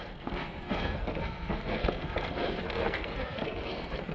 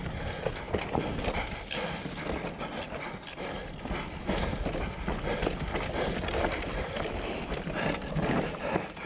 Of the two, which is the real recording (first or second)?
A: second